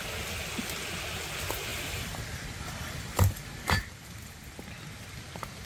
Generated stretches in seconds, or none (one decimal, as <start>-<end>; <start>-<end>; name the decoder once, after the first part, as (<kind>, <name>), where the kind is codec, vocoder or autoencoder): 1.7-4.6 (vocoder, BigVGAN v2)